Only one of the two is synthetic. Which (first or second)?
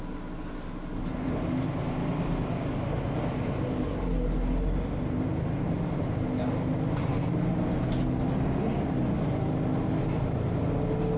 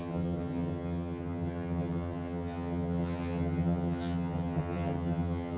second